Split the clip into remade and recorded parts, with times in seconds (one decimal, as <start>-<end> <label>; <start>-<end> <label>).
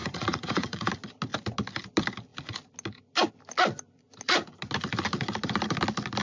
0.0-0.9 remade; 0.9-6.2 recorded